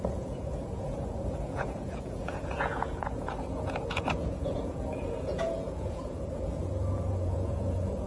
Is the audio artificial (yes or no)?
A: yes